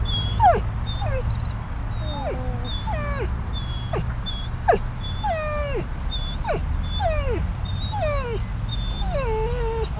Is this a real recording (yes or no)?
yes